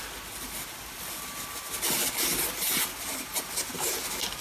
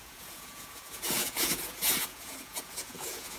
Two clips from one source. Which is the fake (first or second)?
second